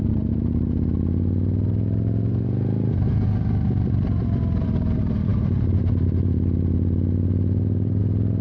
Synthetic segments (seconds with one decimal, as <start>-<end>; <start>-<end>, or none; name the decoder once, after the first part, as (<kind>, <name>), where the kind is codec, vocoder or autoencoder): 0.0-8.4 (vocoder, BigVGAN v2)